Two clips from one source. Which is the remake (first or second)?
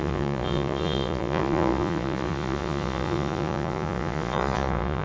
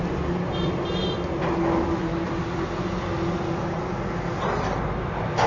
first